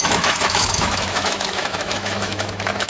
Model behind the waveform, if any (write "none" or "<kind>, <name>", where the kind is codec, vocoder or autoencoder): autoencoder, DAC-VAE